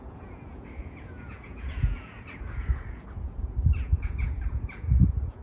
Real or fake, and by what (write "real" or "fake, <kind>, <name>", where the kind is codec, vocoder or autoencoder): fake, vocoder, Vocos